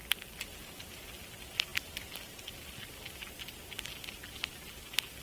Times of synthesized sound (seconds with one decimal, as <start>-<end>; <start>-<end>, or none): none